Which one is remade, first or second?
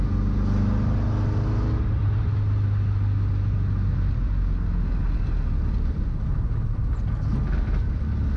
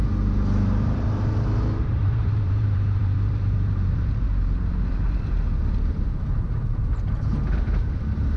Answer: second